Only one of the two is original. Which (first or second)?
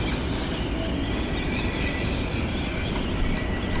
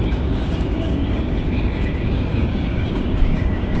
first